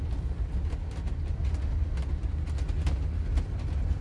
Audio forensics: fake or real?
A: real